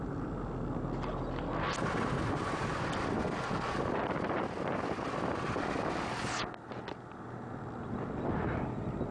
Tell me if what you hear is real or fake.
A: real